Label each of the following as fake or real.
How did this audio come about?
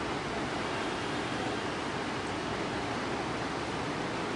real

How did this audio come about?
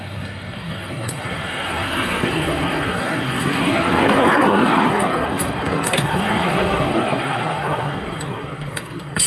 fake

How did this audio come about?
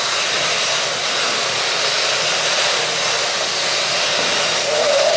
real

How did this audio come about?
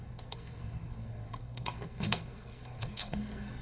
fake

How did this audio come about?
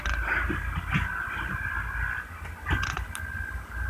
real